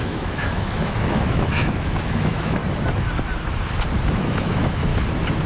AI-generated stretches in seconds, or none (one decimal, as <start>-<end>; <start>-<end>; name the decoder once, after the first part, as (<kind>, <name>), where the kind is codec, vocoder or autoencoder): 0.0-2.6 (autoencoder, DAC-VAE); 4.1-4.9